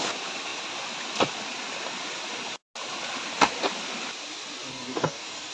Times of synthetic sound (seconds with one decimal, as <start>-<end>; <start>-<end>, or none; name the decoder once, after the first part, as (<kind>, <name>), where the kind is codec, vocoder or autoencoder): 4.7-5.5 (codec, DAC)